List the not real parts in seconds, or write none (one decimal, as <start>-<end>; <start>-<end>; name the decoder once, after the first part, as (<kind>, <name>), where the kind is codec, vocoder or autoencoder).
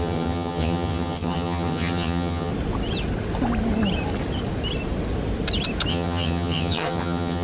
0.0-2.5 (vocoder, HiFi-GAN); 5.9-7.4